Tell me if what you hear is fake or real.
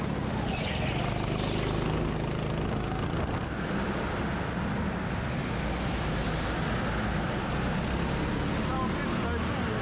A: real